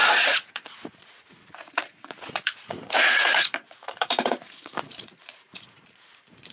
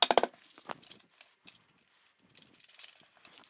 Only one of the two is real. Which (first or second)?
second